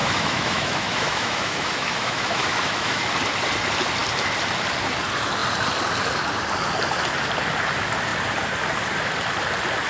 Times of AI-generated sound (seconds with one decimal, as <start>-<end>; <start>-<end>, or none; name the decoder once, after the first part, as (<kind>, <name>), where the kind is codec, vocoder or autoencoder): 0.0-3.0 (autoencoder, DAC-VAE)